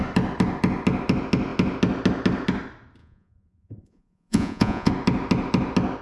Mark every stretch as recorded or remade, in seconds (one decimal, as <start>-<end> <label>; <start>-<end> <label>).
0.0-3.0 recorded; 3.0-4.9 remade; 4.9-6.0 recorded

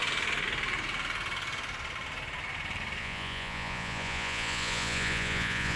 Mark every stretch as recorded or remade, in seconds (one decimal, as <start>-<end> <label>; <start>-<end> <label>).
0.0-3.0 recorded; 3.0-5.8 remade

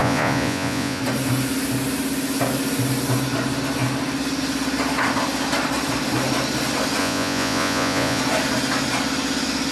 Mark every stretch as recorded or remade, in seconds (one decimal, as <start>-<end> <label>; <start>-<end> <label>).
0.0-1.0 remade; 1.0-7.0 recorded; 7.0-8.2 remade; 8.2-9.7 recorded

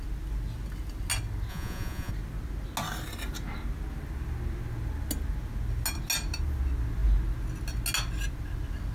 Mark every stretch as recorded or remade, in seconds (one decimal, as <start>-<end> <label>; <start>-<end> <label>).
0.0-1.5 recorded; 1.5-2.1 remade; 2.1-8.9 recorded

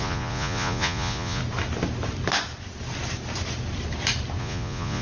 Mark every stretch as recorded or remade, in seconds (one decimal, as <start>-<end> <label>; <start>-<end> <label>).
0.0-1.4 remade; 1.4-4.4 recorded; 4.4-5.0 remade

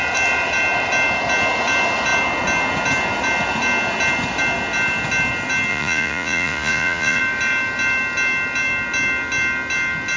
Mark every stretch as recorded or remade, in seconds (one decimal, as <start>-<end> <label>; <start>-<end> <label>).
0.0-5.7 recorded; 5.7-7.2 remade; 7.2-10.2 recorded

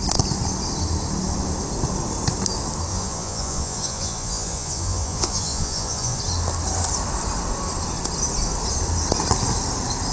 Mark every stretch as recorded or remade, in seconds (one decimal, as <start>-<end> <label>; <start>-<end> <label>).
0.0-2.9 recorded; 2.9-6.2 remade; 6.2-10.1 recorded